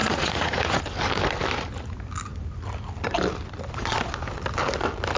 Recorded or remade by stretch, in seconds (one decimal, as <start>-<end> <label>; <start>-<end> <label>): 0.0-0.8 remade; 0.8-5.2 recorded